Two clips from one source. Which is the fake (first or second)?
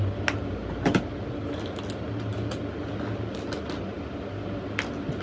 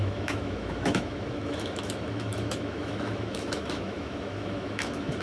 second